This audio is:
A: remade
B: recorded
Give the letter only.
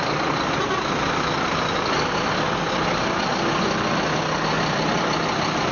B